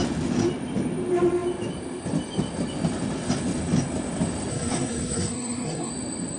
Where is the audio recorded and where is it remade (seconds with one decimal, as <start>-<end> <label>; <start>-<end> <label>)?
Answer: 0.0-4.5 recorded; 4.5-5.9 remade; 5.9-6.4 recorded